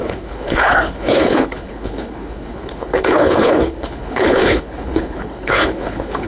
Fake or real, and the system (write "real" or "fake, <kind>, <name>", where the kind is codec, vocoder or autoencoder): fake, codec, HILCodec